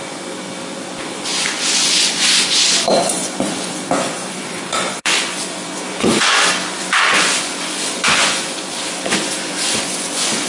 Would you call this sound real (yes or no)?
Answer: no